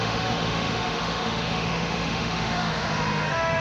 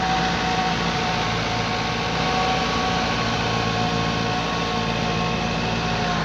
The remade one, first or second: first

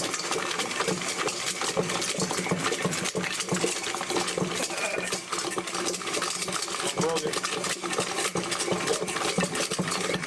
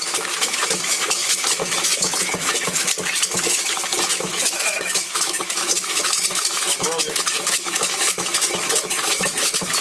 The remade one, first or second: second